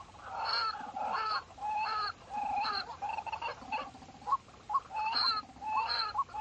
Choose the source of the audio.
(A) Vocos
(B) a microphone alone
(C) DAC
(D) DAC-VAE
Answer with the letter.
B